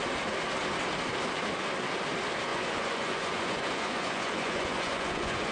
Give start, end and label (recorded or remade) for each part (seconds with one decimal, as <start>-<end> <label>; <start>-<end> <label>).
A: 0.0-2.5 recorded; 2.5-5.5 remade